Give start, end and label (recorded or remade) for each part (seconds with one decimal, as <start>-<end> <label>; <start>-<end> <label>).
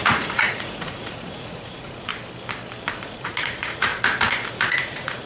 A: 0.0-2.1 remade; 2.1-3.0 recorded; 3.0-3.9 remade; 3.9-4.5 recorded; 4.5-5.3 remade